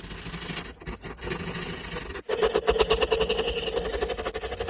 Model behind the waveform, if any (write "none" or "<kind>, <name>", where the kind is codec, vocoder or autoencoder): none